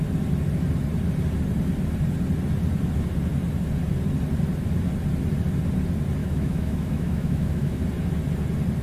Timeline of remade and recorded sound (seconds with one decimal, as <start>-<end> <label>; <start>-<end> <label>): 0.0-6.2 recorded; 6.2-7.8 remade; 7.8-8.8 recorded